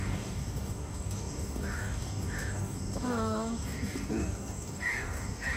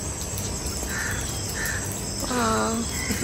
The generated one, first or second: first